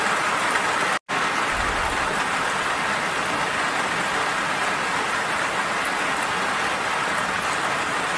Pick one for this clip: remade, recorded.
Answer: recorded